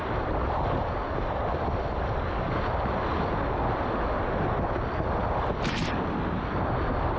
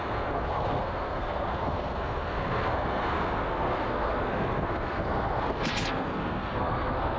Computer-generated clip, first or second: second